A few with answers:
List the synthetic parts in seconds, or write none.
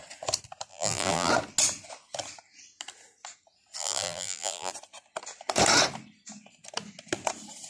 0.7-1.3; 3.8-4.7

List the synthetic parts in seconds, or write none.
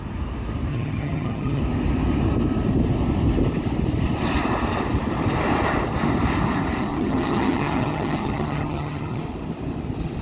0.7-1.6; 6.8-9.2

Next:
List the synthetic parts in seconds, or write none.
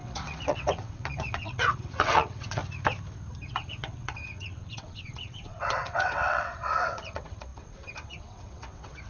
0.0-2.6; 3.5-9.1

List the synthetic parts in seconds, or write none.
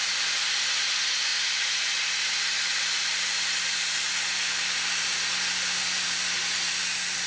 none